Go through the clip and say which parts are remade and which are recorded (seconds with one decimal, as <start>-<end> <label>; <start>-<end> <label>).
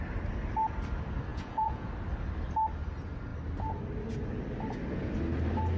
0.0-1.3 recorded; 1.3-1.9 remade; 1.9-5.8 recorded